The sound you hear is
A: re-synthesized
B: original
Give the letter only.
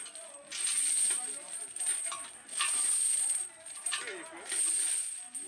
B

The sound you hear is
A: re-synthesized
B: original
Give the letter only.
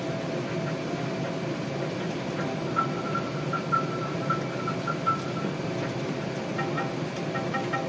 B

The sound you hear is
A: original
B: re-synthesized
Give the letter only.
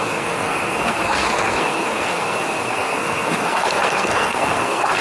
B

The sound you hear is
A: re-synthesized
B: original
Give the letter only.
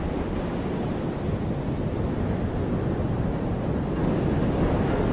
B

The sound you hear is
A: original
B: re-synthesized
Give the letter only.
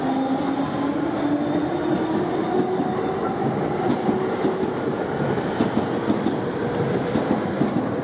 A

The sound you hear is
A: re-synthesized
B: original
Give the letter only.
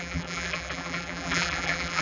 A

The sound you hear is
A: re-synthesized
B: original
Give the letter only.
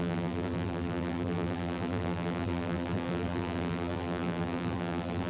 A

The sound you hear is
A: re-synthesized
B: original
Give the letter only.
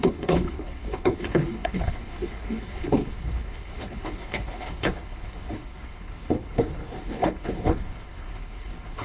A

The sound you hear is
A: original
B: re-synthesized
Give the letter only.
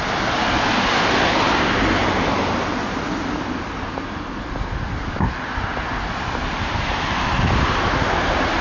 A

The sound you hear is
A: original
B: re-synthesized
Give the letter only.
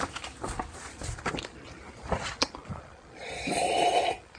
B